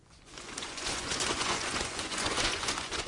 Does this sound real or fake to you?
fake